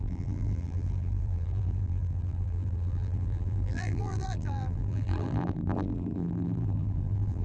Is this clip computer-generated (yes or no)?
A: yes